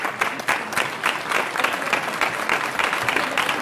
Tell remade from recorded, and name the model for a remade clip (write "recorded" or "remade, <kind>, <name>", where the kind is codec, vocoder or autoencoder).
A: recorded